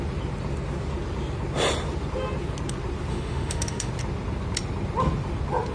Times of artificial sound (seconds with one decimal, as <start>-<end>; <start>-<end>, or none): 3.1-3.9